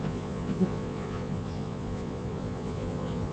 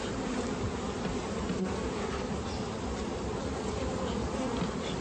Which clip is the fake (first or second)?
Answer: first